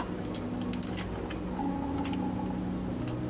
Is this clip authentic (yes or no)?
yes